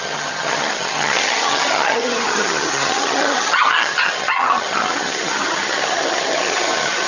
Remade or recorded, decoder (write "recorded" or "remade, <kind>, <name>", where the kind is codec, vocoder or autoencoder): remade, vocoder, HiFi-GAN